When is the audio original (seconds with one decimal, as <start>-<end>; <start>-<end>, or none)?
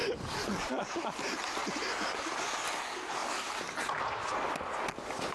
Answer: 0.8-5.3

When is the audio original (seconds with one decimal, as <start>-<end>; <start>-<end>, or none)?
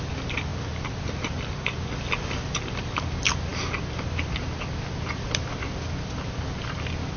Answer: 0.0-7.2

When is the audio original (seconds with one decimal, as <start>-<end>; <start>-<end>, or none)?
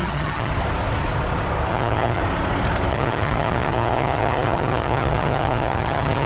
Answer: 0.5-1.7; 2.2-2.9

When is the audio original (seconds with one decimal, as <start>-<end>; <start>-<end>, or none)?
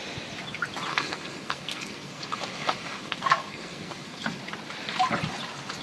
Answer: 0.0-0.9; 4.4-5.8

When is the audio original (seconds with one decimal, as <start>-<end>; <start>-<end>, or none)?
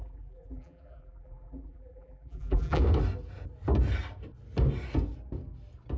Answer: 2.8-6.0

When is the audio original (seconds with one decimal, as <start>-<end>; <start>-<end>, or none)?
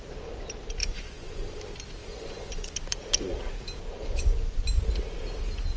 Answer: 0.0-0.8; 1.6-2.0; 2.7-4.0; 4.6-5.8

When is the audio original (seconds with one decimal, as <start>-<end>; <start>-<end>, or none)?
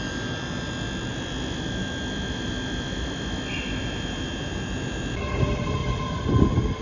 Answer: 5.8-6.8